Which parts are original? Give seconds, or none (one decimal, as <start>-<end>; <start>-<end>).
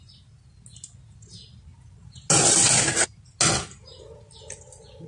0.0-5.1